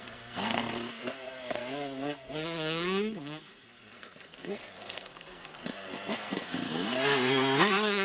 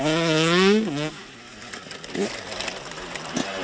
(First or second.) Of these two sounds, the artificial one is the first